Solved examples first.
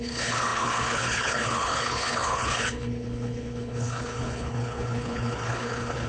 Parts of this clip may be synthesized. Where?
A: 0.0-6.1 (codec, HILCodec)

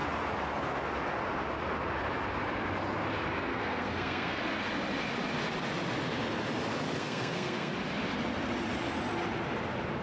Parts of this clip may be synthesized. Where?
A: 3.5-4.4 (codec, SNAC); 7.0-7.7

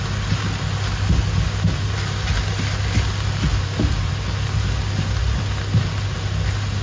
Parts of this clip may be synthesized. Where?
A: 3.5-4.1 (vocoder, BigVGAN v2)

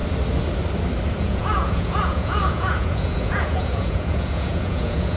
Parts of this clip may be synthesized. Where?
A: 1.1-5.2 (vocoder, Vocos)

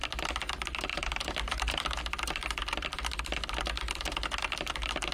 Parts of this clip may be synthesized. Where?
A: 0.9-2.0 (vocoder, BigVGAN v2)

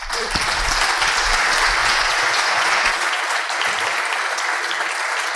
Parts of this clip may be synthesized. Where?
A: 1.8-3.2 (vocoder, Vocos)